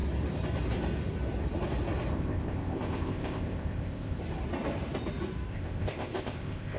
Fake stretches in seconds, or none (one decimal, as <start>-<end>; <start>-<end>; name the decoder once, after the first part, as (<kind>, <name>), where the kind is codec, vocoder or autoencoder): 2.1-4.2 (codec, ZipCodec); 5.5-6.8